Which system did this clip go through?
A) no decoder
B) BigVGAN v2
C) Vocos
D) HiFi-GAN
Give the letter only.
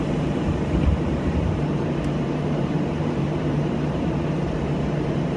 B